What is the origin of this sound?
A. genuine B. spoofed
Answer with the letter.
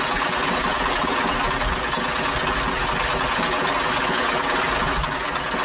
A